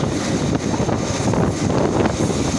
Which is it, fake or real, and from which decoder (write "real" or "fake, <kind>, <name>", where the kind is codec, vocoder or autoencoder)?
real